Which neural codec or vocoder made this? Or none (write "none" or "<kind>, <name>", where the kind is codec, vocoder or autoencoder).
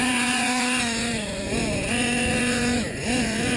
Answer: vocoder, Vocos